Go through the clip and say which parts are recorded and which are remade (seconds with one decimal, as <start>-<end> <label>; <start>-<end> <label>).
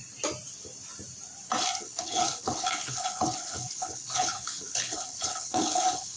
0.0-1.8 recorded; 1.8-6.2 remade